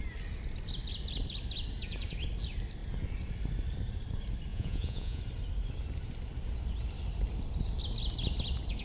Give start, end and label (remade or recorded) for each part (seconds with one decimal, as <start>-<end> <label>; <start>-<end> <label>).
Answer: 0.0-4.5 recorded; 4.5-5.2 remade; 5.2-8.8 recorded